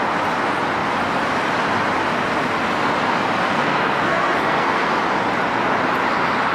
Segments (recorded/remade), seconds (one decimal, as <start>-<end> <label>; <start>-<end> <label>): 0.0-3.4 recorded; 3.4-5.0 remade; 5.0-6.5 recorded